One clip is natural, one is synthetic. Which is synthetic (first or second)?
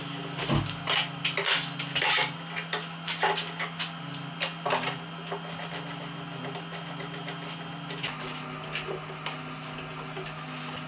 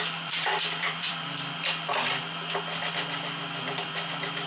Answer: second